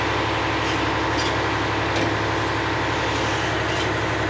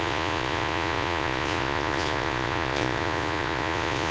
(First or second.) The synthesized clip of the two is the second